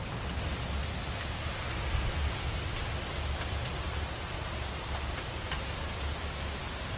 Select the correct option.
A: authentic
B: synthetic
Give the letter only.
A